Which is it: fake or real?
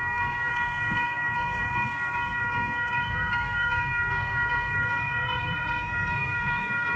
fake